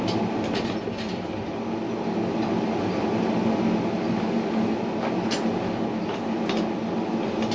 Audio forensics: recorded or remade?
recorded